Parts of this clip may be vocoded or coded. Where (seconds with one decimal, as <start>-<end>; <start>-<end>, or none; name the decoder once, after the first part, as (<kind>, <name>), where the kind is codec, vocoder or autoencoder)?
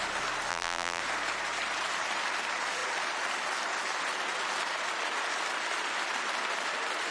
0.5-1.0 (vocoder, BigVGAN v2)